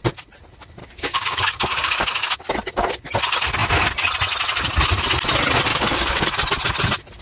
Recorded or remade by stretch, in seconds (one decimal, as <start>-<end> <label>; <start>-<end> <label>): 0.0-0.8 recorded; 0.8-2.4 remade; 2.4-5.7 recorded; 5.7-6.3 remade; 6.3-7.2 recorded